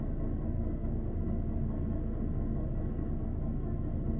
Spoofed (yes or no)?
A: yes